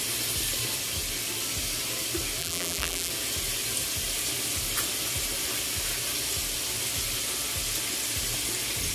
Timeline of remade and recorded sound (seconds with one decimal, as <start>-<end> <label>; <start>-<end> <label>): 0.0-2.4 recorded; 2.4-3.1 remade; 3.1-8.9 recorded